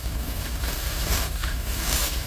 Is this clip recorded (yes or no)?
no